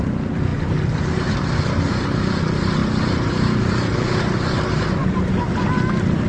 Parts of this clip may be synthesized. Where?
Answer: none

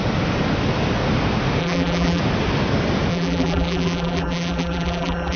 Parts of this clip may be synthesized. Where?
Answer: 1.6-2.2 (vocoder, BigVGAN v2); 3.1-5.4

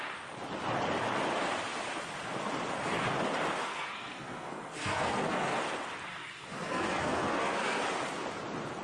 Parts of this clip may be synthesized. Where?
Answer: 3.6-5.6 (codec, SNAC); 6.1-7.8

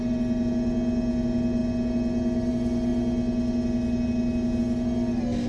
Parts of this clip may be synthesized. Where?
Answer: none

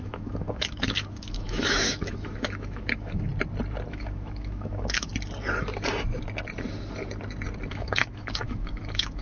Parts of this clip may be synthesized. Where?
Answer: 0.0-3.3 (autoencoder, DAC-VAE); 3.9-5.1; 7.7-9.2